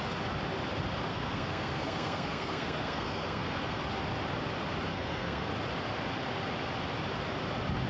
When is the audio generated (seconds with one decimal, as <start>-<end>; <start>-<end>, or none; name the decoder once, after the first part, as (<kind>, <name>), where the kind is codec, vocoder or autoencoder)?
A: 1.1-3.8 (codec, SNAC); 4.9-5.5